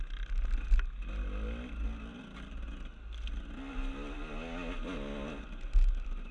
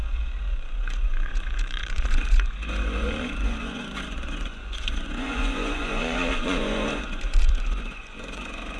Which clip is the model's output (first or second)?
second